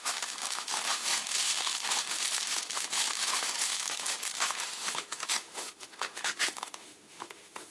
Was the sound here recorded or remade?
remade